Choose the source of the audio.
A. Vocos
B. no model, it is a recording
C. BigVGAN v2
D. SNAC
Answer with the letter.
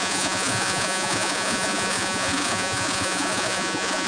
A